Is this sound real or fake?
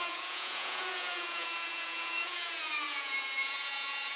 fake